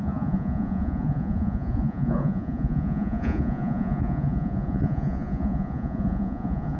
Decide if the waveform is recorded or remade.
remade